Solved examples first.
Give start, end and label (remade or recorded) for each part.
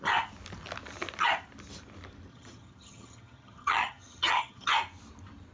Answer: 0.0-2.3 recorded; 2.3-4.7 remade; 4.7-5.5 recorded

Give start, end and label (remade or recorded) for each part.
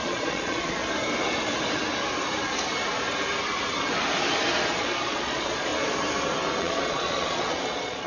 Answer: 0.0-0.8 remade; 0.8-4.7 recorded; 4.7-5.7 remade; 5.7-6.6 recorded; 6.6-8.1 remade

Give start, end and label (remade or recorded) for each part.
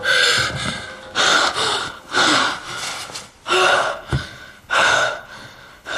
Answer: 0.0-1.3 recorded; 1.3-2.4 remade; 2.4-3.7 recorded; 3.7-6.0 remade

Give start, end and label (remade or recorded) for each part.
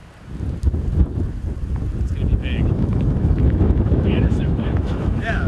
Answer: 0.0-2.7 recorded; 2.7-5.5 remade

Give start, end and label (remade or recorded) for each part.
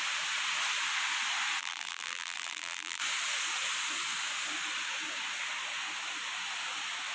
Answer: 0.0-1.6 recorded; 1.6-3.0 remade; 3.0-7.1 recorded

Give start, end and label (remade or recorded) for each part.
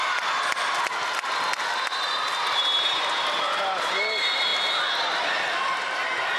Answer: 0.0-6.4 recorded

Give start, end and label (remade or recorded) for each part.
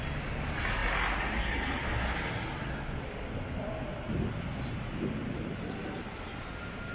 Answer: 0.0-6.9 recorded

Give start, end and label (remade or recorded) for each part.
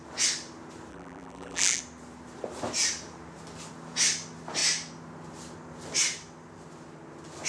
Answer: 0.0-0.9 recorded; 0.9-1.8 remade; 1.8-7.5 recorded